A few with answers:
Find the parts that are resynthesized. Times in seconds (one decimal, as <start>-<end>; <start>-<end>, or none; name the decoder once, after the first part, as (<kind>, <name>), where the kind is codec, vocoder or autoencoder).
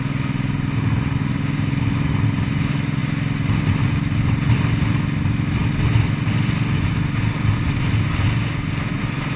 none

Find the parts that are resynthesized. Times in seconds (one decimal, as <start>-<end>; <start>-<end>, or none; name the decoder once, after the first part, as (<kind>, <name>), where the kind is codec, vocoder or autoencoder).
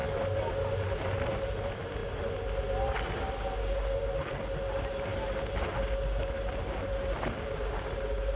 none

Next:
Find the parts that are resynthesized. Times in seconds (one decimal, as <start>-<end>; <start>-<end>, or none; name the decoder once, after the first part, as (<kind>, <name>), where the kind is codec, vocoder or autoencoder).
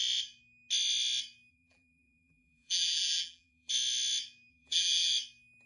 1.5-3.7 (vocoder, BigVGAN v2); 4.5-5.1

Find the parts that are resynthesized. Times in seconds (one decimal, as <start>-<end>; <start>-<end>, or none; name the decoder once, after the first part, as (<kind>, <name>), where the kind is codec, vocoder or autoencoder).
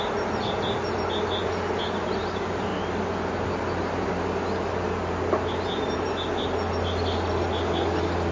none